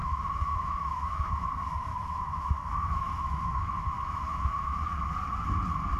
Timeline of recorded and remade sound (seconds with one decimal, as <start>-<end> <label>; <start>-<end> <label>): 0.0-1.5 remade; 1.5-1.9 recorded; 1.9-4.8 remade; 4.8-6.0 recorded